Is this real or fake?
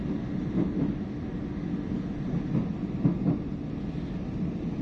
real